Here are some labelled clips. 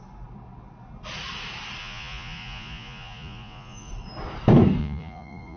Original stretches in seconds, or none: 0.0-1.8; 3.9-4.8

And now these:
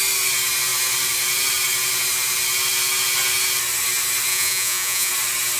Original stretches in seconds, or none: 0.0-4.3; 5.1-5.6

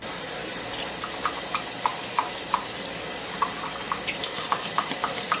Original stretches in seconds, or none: 0.0-0.4; 1.2-1.9

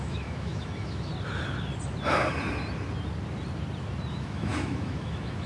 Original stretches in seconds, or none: 1.1-4.1

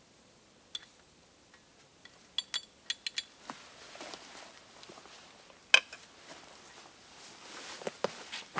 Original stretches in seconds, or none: 0.0-8.6

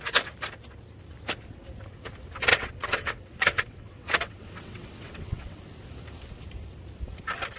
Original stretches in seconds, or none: 0.0-2.5; 5.6-7.6

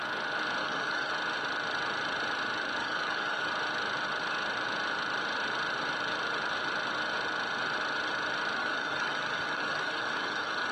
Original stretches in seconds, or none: 0.0-0.6; 1.1-2.8; 3.5-8.6

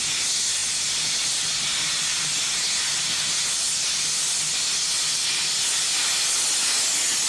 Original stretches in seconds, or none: 0.0-7.3